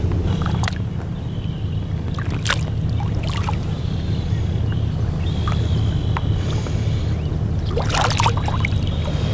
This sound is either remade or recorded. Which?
recorded